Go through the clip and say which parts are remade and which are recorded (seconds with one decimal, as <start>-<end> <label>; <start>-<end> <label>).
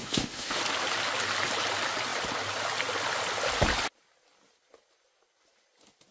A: 0.0-0.6 remade; 0.6-6.1 recorded